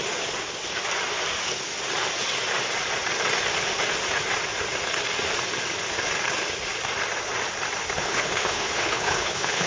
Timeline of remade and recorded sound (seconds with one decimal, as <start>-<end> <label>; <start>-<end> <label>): 0.0-8.0 recorded; 8.0-9.7 remade